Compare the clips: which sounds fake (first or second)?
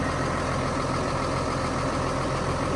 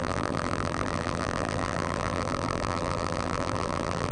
second